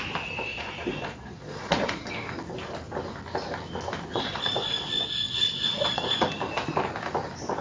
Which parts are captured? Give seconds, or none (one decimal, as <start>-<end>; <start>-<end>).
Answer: 0.0-0.5; 2.1-4.1; 6.1-7.6